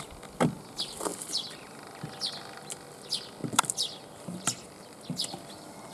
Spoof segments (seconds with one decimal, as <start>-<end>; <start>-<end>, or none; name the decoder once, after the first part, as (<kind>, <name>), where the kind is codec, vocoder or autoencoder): 1.1-2.0 (vocoder, BigVGAN v2); 3.4-4.8